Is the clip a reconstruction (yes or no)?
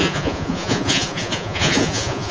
yes